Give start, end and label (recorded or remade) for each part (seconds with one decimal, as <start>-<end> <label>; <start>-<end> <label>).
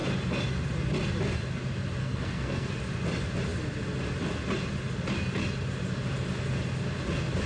0.0-2.0 recorded; 2.0-2.7 remade; 2.7-7.5 recorded